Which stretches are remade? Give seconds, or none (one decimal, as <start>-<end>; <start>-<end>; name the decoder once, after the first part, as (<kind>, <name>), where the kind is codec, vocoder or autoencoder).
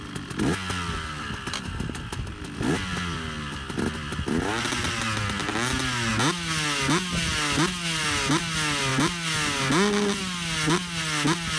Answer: none